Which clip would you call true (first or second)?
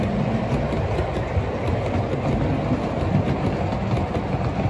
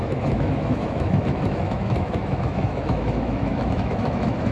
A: first